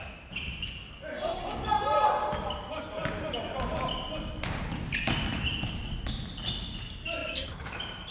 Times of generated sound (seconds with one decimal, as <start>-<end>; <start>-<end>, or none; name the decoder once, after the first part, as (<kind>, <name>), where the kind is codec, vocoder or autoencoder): 7.2-8.1 (vocoder, BigVGAN v2)